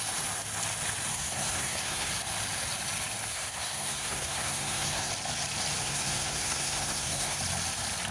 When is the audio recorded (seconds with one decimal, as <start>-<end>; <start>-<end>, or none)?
0.0-1.1; 2.1-3.3; 5.1-5.8; 7.4-8.1

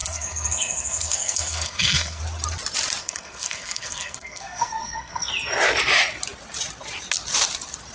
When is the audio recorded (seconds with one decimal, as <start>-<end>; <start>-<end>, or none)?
2.2-3.0; 5.3-7.9

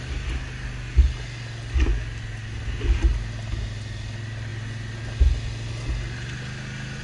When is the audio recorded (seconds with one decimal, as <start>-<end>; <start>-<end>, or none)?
0.0-7.0

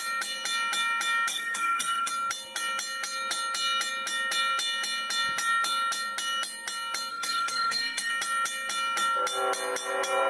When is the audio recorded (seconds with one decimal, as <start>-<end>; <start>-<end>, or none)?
0.0-1.3; 2.1-7.1; 8.1-10.3

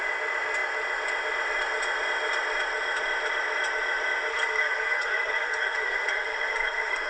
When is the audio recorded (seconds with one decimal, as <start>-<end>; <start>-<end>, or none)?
0.0-4.3

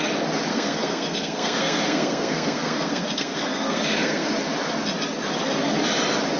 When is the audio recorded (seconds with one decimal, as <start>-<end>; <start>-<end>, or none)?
0.0-0.5; 4.3-6.4